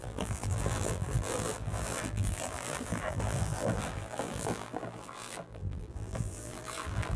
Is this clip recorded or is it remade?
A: remade